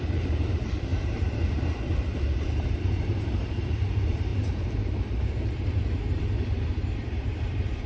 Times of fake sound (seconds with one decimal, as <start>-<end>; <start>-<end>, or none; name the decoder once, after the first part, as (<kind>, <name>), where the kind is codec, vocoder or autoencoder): 0.0-7.9 (vocoder, BigVGAN v2)